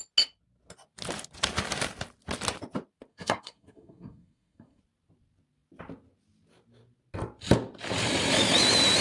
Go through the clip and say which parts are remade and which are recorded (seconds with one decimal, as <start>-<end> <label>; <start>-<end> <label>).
0.0-3.1 recorded; 3.1-4.8 remade; 4.8-9.0 recorded